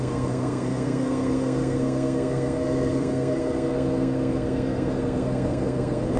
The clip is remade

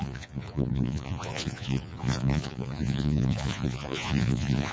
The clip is remade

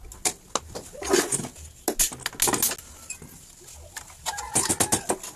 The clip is recorded